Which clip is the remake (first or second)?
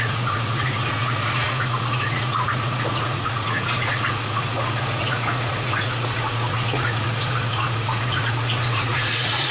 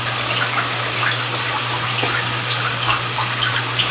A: first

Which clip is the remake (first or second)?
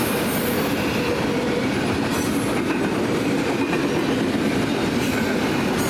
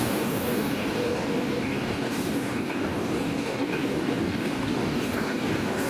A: second